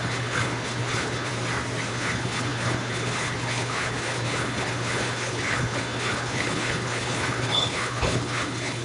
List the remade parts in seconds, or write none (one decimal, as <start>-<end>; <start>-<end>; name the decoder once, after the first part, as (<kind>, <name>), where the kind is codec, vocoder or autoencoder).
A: 0.0-1.3 (codec, HILCodec); 1.9-8.8